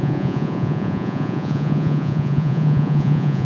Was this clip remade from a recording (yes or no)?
yes